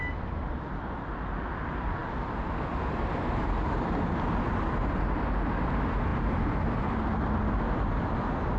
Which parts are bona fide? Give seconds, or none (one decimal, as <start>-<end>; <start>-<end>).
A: 0.0-8.6